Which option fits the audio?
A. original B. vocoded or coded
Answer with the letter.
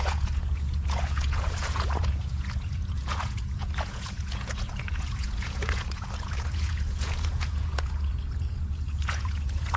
B